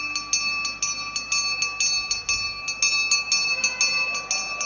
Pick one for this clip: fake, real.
real